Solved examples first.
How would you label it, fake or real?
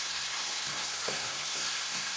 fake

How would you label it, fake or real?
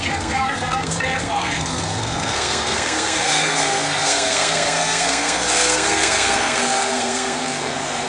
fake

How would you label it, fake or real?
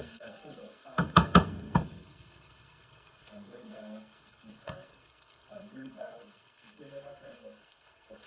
fake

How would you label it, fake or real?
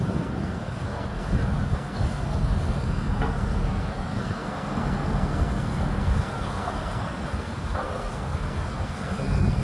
fake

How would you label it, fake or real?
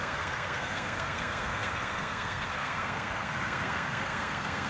fake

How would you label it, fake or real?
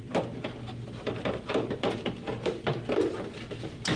real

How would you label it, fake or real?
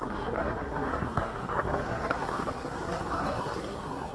fake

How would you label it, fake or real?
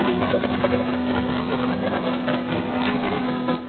fake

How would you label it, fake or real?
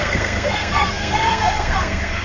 fake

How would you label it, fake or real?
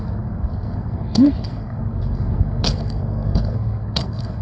fake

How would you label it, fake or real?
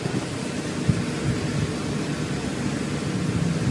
real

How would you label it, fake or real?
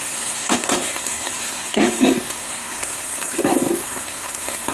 fake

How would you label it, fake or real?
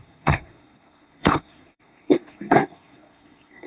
fake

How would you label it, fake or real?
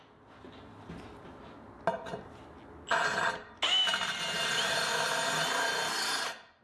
real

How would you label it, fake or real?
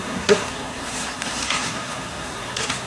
fake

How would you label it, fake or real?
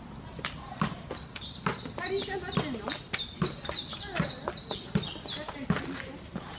real